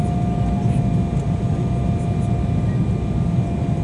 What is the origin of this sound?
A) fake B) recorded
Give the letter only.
B